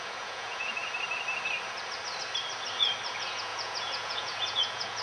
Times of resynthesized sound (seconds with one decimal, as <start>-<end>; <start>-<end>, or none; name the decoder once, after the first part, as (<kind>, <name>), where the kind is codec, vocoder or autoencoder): 0.0-0.8 (vocoder, Vocos); 3.1-5.0